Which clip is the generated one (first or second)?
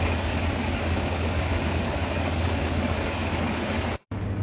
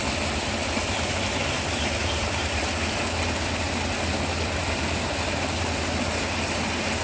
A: first